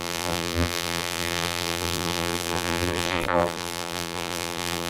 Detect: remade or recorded remade